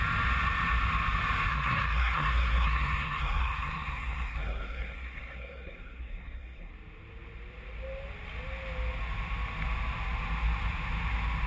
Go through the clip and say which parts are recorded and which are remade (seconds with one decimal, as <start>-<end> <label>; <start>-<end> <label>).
0.0-1.5 recorded; 1.5-6.7 remade; 6.7-11.5 recorded